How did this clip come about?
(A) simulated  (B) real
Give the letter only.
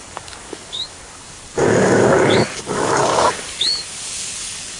A